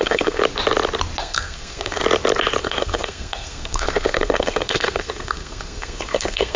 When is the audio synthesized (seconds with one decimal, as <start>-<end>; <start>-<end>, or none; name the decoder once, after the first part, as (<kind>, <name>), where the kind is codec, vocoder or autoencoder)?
0.0-0.4 (codec, SNAC); 1.2-2.0; 2.6-6.6